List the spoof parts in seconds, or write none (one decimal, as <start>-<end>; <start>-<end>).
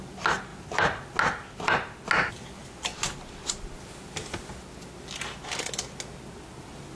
none